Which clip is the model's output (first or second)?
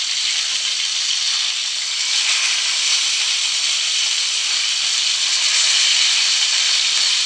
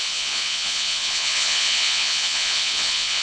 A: second